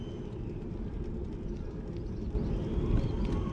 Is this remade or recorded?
recorded